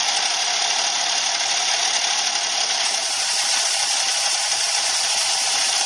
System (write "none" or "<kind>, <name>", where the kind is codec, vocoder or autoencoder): vocoder, BigVGAN v2